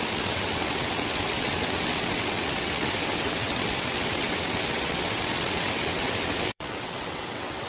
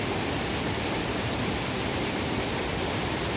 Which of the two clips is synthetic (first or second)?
first